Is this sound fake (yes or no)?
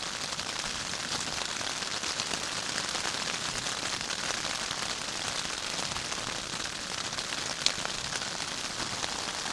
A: no